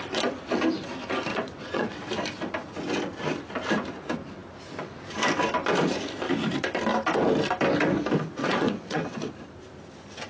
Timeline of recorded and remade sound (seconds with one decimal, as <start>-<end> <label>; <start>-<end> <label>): 0.0-1.3 recorded; 1.3-2.1 remade; 2.1-8.4 recorded; 8.4-9.3 remade; 9.3-10.3 recorded